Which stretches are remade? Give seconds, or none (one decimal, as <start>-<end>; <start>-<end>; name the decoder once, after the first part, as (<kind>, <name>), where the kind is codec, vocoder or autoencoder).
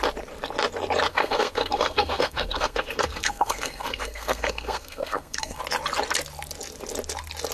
1.1-5.6 (codec, SNAC)